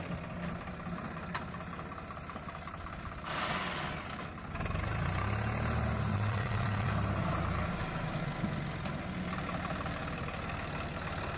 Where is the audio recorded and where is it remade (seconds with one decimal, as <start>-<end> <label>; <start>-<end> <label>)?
0.0-6.1 recorded; 6.1-6.9 remade; 6.9-11.4 recorded